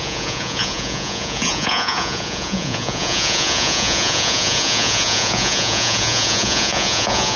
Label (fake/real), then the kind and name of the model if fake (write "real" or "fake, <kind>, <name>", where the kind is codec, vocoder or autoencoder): fake, vocoder, Vocos